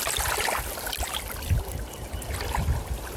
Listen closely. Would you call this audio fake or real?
fake